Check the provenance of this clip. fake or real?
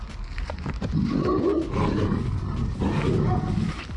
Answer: real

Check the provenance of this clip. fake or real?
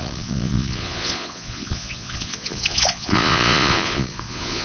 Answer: fake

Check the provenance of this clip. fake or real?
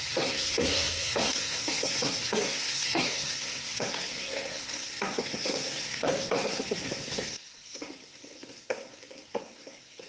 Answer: fake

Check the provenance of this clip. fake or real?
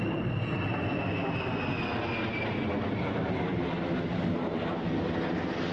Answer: real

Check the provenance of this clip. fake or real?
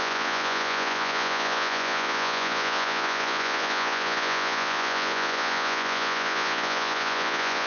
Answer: fake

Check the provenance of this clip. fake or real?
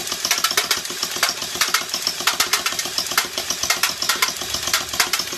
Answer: real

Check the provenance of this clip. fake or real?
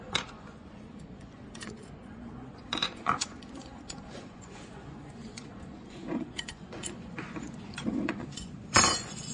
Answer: fake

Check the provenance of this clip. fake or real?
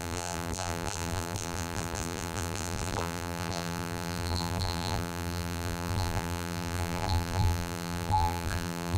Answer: fake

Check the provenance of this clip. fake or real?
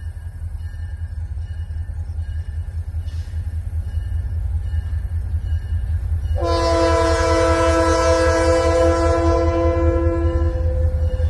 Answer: real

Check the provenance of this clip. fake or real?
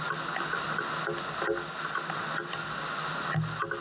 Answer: real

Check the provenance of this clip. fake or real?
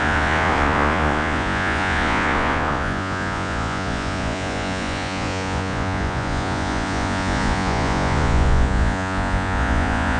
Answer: fake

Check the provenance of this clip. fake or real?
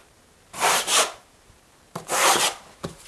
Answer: fake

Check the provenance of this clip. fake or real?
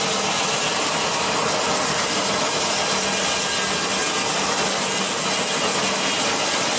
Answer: real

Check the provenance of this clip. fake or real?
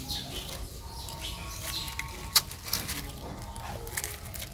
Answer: real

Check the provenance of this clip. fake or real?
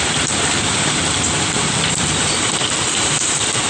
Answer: fake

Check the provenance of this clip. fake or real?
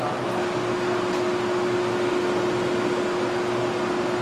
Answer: real